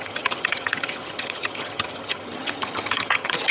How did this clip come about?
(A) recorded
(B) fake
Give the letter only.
B